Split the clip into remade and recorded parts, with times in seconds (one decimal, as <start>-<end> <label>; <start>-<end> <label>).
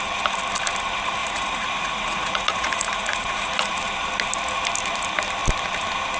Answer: 0.0-1.2 recorded; 1.2-3.7 remade; 3.7-6.2 recorded